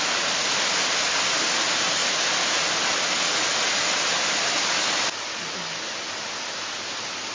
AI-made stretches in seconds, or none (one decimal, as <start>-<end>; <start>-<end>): none